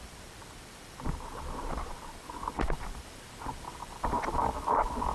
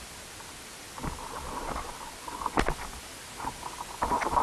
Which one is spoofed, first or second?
first